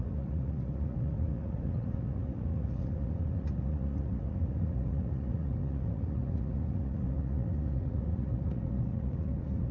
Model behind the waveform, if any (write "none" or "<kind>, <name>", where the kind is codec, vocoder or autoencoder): vocoder, Vocos